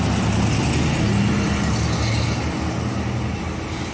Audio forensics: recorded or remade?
recorded